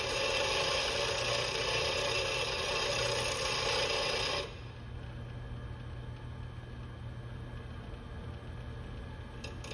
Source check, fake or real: real